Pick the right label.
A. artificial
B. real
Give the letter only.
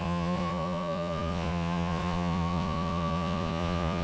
A